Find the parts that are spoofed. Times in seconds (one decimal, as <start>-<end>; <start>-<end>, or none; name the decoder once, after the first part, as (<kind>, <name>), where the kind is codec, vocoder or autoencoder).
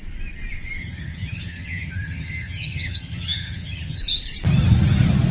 0.8-4.0 (vocoder, HiFi-GAN)